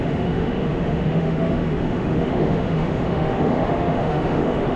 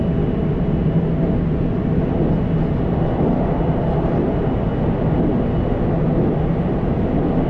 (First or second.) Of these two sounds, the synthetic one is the first